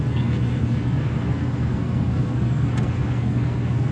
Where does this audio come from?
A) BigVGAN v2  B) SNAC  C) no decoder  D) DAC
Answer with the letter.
B